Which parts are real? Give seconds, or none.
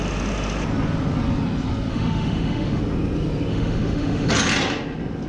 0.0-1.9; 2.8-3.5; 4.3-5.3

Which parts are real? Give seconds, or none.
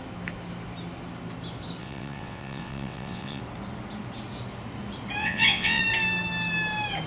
0.0-1.8; 3.4-5.2; 5.8-7.1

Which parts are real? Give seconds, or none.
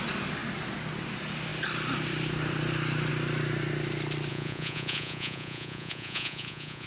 0.0-4.3